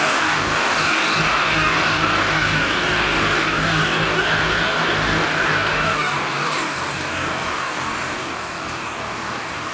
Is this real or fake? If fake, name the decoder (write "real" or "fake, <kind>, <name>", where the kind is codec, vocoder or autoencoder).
fake, codec, DAC